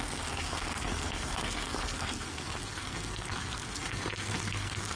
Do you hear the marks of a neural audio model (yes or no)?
yes